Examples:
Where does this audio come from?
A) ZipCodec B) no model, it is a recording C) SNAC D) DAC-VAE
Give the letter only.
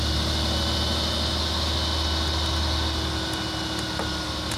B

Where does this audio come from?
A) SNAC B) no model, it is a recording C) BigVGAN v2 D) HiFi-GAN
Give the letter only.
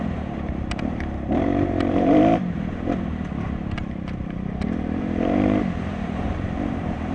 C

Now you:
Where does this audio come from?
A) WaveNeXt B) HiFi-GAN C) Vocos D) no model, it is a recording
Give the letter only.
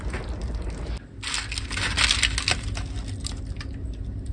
D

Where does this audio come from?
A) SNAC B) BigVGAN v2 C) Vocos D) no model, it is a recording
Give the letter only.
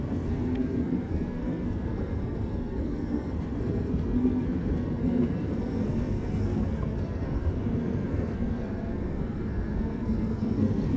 A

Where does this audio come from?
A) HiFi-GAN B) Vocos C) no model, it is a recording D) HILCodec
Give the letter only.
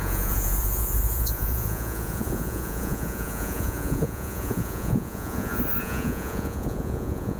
B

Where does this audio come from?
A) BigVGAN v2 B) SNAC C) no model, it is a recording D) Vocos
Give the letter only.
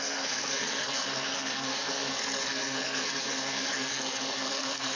B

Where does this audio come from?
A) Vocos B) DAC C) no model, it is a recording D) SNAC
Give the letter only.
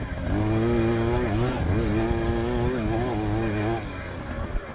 C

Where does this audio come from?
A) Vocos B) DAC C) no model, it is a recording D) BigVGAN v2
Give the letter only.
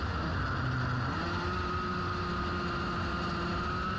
C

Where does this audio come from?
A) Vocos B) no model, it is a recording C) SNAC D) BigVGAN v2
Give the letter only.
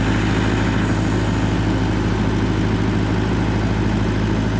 B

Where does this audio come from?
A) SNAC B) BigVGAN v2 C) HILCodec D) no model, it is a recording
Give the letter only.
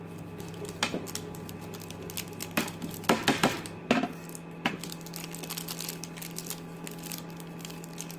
D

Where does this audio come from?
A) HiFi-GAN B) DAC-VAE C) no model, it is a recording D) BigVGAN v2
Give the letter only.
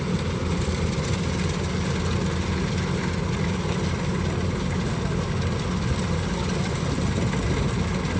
C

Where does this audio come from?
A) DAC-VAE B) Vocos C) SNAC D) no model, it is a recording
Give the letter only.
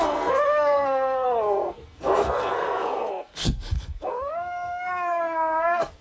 C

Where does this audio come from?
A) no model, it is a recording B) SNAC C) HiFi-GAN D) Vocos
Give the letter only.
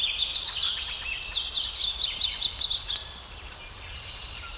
A